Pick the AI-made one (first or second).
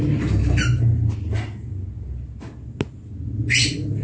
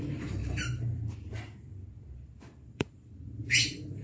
second